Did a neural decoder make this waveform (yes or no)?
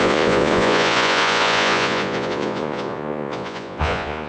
yes